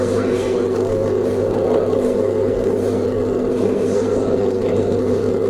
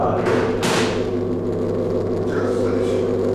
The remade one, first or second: first